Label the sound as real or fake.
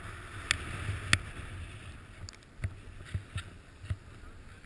real